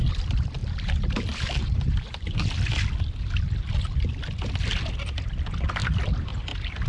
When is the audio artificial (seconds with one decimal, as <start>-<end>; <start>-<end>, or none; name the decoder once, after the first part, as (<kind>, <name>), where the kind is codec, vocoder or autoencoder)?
0.6-2.4 (vocoder, BigVGAN v2)